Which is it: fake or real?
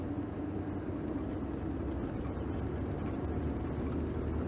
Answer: real